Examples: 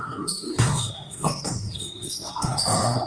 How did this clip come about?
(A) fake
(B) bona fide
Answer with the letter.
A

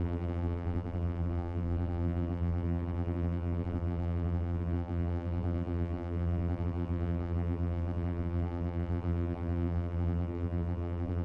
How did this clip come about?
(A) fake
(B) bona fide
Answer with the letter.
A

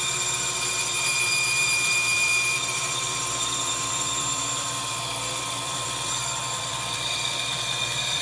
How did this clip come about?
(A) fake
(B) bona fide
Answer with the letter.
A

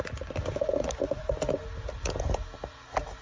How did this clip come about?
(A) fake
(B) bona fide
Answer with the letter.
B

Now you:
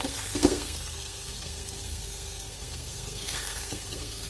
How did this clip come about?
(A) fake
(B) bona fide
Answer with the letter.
A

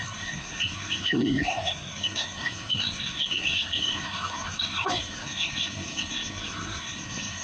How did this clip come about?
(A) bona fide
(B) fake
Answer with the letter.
B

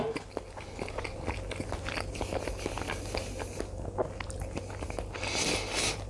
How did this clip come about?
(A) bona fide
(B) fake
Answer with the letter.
A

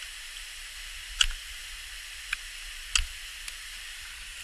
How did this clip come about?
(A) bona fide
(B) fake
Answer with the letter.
A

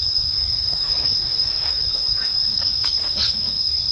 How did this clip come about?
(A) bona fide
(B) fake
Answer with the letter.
B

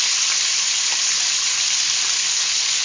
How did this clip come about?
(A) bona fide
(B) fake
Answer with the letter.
B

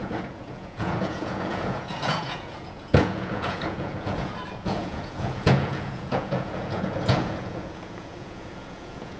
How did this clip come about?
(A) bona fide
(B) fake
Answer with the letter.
B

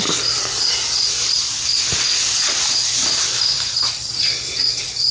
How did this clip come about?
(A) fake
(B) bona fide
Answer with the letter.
B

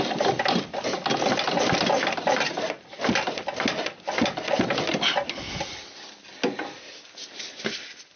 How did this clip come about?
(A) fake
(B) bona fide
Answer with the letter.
B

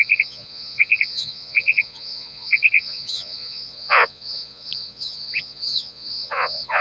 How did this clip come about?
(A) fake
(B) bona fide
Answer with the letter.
A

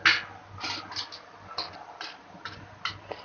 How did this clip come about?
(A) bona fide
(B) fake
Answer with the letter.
A